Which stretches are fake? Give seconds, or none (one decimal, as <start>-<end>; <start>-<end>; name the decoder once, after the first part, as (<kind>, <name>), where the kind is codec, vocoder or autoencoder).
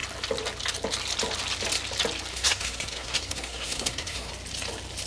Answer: 2.3-4.3 (codec, SNAC)